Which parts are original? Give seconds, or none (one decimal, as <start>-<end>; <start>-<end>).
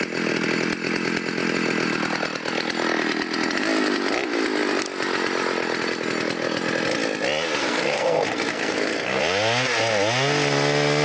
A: 0.0-7.6; 9.2-11.0